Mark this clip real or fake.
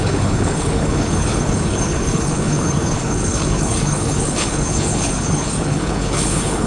fake